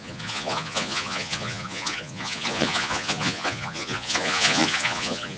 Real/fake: fake